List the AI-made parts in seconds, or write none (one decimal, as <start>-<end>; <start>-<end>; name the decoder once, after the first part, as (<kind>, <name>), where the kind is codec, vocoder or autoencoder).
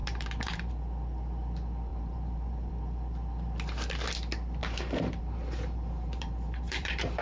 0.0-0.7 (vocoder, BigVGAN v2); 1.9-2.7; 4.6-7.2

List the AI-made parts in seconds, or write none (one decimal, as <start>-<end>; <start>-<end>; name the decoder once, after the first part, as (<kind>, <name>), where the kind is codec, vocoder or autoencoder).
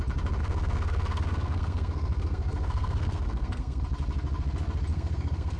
0.4-3.8 (codec, SNAC); 4.9-5.6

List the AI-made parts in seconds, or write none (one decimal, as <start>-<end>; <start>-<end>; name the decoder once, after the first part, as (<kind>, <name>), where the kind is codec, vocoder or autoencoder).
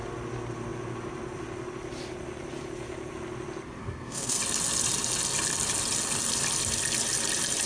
3.8-4.4 (codec, SNAC)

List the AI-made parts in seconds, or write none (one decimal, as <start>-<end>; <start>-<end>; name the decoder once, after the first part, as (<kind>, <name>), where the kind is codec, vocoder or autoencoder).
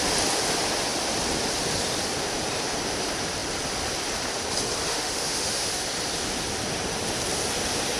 4.9-5.7 (autoencoder, DAC-VAE)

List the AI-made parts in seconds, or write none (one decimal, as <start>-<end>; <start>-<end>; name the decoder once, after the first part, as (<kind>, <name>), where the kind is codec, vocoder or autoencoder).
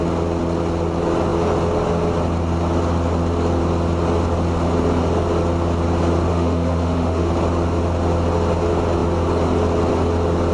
6.3-7.3 (autoencoder, DAC-VAE)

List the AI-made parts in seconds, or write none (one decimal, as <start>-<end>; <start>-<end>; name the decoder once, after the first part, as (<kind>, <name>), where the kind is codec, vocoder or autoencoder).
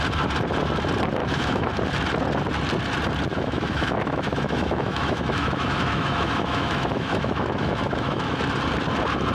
1.2-1.7 (autoencoder, DAC-VAE); 3.3-8.4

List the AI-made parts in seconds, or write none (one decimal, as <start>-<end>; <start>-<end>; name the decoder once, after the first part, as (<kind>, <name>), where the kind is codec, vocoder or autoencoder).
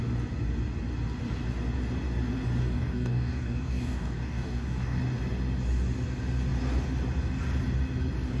2.6-5.0 (codec, DAC)